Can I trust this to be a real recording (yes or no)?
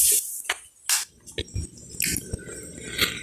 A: yes